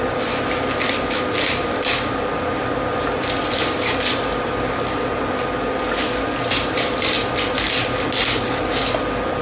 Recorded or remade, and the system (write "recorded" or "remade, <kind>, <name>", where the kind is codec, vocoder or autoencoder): recorded